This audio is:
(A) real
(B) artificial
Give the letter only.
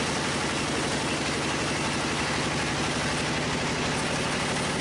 A